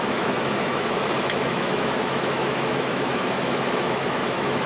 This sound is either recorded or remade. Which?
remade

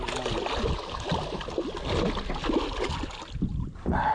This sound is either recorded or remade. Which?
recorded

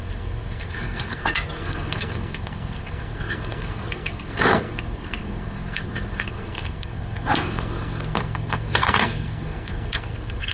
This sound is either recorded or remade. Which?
remade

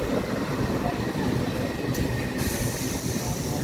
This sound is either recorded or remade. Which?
recorded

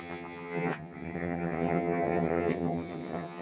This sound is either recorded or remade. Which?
remade